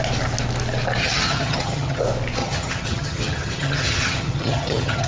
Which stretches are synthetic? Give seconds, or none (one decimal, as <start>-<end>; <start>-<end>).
1.0-2.0; 2.4-5.1